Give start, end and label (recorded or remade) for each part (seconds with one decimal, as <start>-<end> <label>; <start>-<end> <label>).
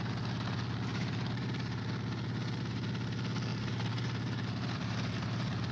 0.0-0.9 recorded; 0.9-1.8 remade; 1.8-3.5 recorded; 3.5-5.7 remade